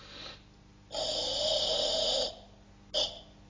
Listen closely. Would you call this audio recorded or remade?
recorded